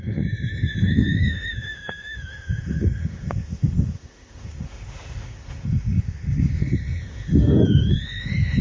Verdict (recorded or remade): remade